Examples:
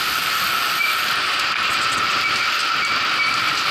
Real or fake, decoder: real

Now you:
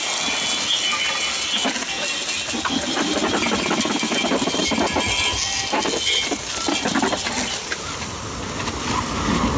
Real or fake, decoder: real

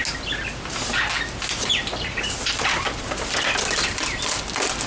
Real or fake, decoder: real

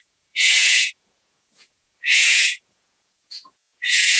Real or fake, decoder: fake, vocoder, Vocos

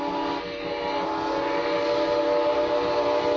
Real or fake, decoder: real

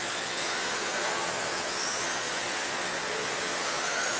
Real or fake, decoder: fake, vocoder, Vocos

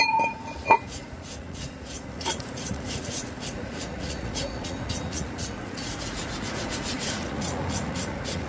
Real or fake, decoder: fake, vocoder, Vocos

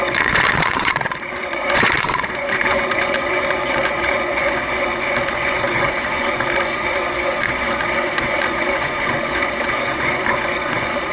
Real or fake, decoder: fake, vocoder, Vocos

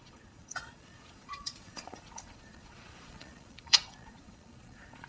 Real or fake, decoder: fake, vocoder, Vocos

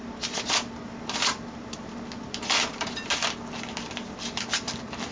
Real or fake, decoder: real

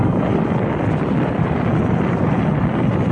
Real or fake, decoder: real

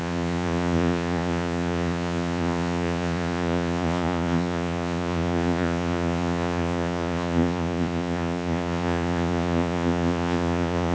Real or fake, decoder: fake, vocoder, Vocos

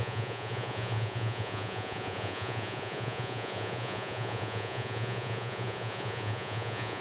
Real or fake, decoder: fake, vocoder, Vocos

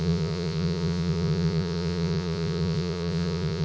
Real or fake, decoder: fake, vocoder, Vocos